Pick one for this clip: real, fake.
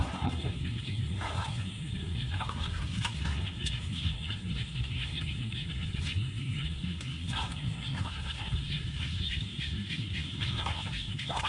fake